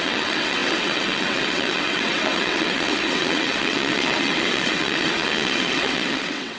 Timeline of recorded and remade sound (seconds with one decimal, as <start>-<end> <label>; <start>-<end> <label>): 0.0-6.6 remade